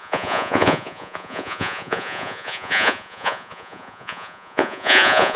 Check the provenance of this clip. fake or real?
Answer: fake